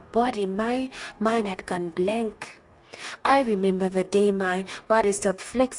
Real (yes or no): no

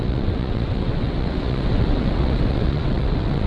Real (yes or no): no